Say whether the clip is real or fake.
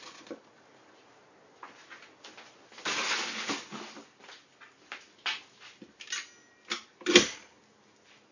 real